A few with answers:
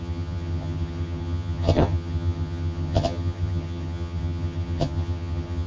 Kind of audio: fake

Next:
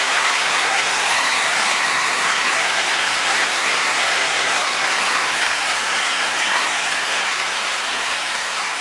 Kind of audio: fake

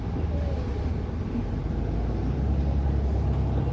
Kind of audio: real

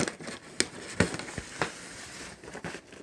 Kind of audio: real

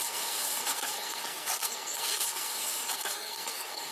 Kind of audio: fake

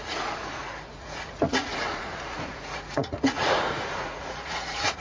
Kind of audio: fake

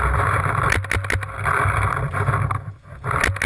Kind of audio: real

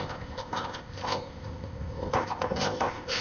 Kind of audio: fake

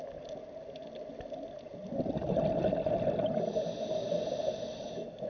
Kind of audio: real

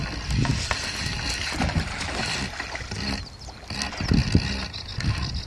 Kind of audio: real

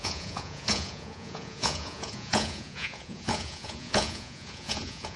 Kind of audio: fake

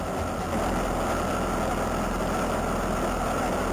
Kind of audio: real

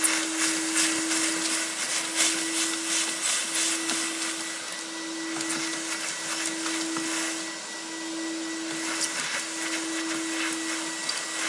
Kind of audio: real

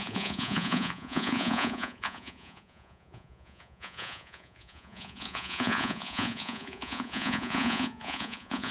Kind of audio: fake